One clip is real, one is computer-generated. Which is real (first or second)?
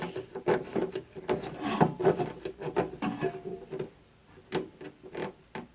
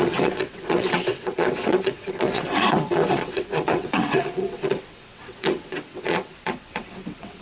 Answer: first